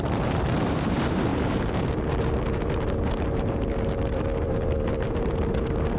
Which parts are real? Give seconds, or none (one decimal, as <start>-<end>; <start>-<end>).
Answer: none